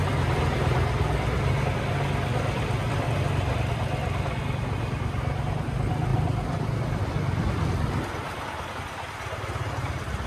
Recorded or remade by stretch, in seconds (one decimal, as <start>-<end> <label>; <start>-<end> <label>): 0.0-6.1 recorded; 6.1-8.7 remade; 8.7-10.3 recorded